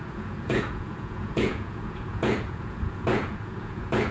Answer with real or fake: fake